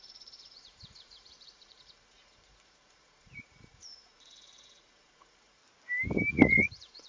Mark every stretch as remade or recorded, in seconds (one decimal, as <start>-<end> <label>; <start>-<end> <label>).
0.0-5.6 remade; 5.6-6.3 recorded; 6.3-7.1 remade